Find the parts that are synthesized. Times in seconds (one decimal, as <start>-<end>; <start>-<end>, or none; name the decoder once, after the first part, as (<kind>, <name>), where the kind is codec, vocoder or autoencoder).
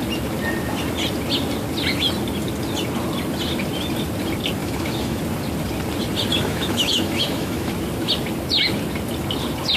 4.6-5.2 (autoencoder, DAC-VAE); 6.3-7.7